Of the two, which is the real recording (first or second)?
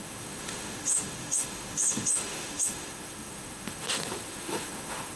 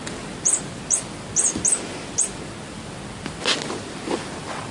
second